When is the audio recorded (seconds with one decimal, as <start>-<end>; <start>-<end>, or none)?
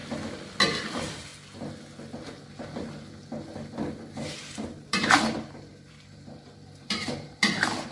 0.0-0.8; 1.3-4.1